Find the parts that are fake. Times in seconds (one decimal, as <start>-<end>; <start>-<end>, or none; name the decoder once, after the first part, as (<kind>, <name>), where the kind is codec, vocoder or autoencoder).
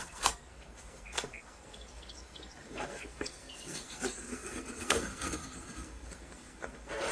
0.0-7.1 (codec, SNAC)